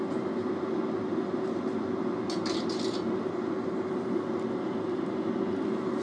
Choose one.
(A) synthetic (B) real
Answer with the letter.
B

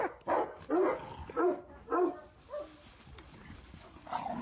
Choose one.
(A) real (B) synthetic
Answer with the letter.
A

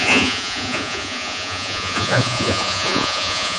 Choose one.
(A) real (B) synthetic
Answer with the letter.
B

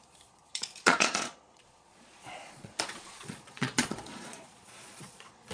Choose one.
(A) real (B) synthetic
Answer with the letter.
B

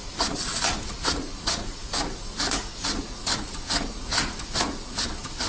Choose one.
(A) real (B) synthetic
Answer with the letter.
B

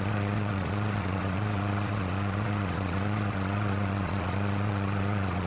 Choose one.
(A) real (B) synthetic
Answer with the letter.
B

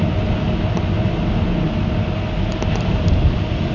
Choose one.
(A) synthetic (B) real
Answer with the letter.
B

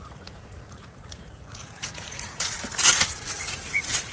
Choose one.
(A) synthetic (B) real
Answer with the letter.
A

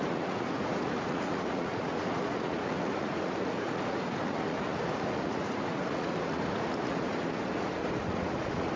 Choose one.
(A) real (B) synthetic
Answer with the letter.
B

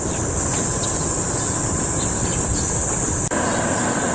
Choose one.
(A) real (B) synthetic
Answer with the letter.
A